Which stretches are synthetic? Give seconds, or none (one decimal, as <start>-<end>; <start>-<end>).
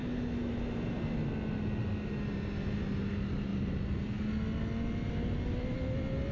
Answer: none